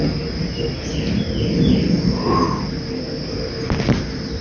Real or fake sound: real